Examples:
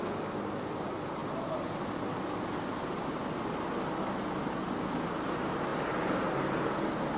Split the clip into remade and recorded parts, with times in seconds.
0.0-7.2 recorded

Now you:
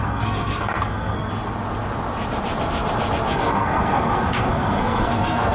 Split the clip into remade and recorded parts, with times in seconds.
0.0-1.3 remade; 1.3-3.3 recorded; 3.3-5.5 remade